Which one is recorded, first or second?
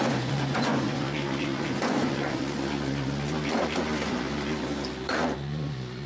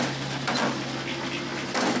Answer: second